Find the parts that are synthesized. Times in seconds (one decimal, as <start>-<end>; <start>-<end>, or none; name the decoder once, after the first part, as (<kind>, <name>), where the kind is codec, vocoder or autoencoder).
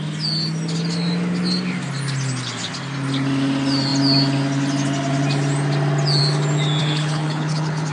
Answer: 6.8-7.9 (codec, HILCodec)